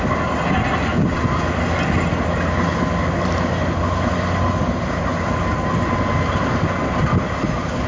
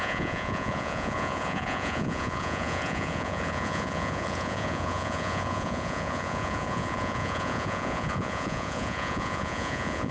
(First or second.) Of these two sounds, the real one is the first